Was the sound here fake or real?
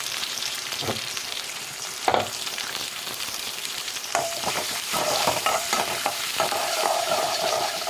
fake